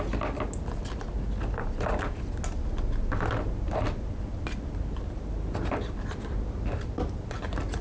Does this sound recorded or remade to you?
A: recorded